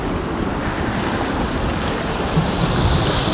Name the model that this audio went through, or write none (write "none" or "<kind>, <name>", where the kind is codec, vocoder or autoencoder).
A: none